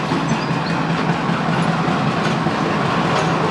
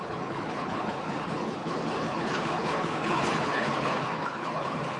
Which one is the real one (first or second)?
first